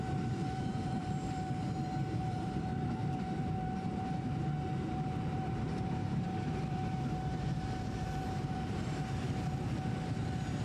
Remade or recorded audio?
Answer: remade